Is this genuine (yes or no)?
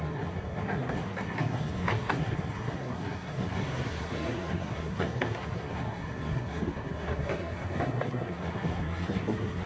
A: no